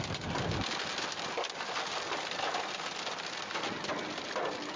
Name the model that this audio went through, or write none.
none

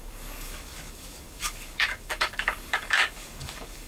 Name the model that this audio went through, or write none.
codec, DAC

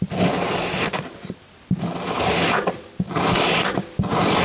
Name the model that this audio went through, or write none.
none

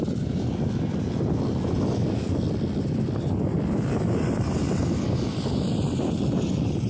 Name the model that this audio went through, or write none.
none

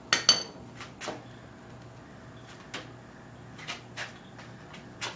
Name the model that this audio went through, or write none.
none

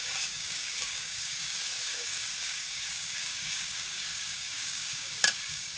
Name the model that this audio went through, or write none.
codec, DAC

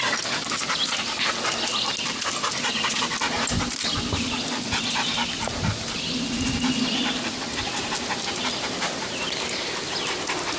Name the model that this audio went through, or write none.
none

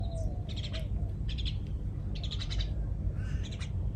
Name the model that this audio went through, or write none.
none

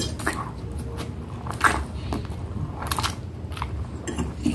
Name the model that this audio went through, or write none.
none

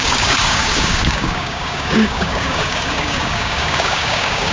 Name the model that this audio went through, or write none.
codec, DAC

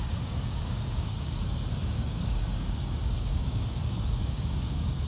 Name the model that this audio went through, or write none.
codec, DAC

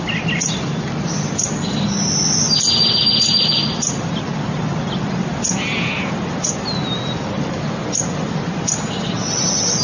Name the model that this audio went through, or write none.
none